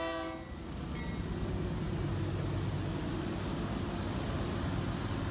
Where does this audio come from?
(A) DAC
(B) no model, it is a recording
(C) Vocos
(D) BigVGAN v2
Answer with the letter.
B